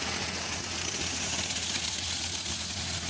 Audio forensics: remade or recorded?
remade